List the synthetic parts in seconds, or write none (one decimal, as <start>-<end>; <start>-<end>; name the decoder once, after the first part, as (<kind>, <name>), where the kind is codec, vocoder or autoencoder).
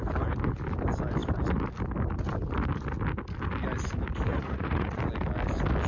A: 4.3-5.0 (vocoder, Vocos)